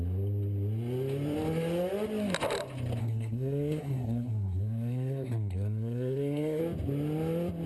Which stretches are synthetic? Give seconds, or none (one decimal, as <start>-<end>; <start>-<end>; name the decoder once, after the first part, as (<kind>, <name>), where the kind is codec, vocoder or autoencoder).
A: 3.0-6.6 (codec, SNAC)